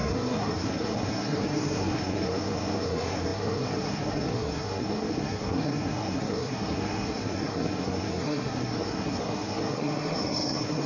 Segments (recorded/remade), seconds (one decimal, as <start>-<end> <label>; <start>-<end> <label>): 0.0-10.9 remade